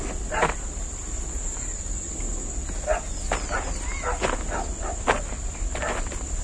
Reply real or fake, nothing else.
real